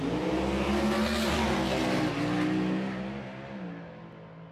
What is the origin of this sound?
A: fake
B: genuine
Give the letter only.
B